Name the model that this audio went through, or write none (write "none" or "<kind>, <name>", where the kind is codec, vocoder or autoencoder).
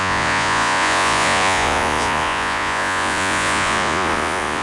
vocoder, Vocos